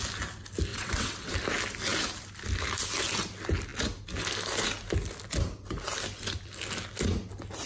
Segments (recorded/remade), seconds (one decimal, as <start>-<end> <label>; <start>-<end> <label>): 0.0-0.7 recorded; 0.7-1.3 remade; 1.3-7.7 recorded